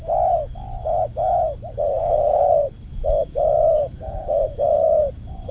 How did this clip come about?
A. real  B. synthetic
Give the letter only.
B